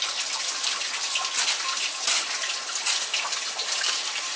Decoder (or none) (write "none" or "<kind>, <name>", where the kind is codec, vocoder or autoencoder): none